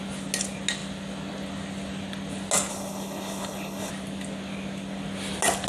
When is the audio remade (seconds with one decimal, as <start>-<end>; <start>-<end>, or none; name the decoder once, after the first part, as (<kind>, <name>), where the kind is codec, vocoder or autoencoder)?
2.7-3.9 (codec, HILCodec)